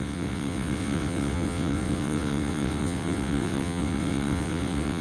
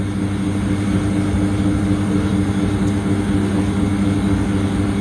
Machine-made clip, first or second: first